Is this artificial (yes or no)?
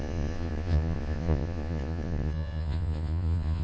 yes